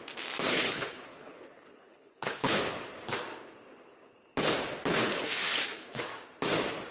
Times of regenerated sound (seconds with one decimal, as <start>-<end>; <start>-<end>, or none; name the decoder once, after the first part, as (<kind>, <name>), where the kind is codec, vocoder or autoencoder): 0.5-2.6 (codec, HILCodec); 4.9-6.0